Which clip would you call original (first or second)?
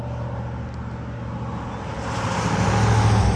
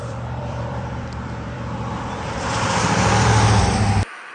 first